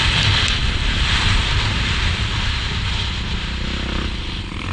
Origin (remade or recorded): recorded